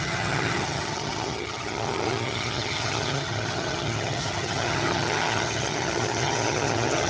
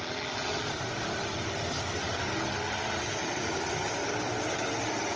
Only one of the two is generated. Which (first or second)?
first